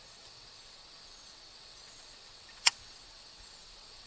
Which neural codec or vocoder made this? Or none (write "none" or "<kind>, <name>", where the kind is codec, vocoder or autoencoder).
vocoder, WaveNeXt